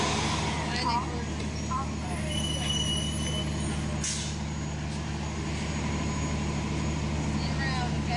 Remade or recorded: recorded